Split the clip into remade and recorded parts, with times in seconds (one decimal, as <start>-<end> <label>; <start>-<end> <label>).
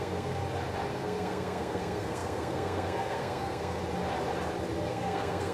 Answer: 0.0-0.4 remade; 0.4-0.9 recorded; 0.9-3.8 remade; 3.8-4.9 recorded; 4.9-5.5 remade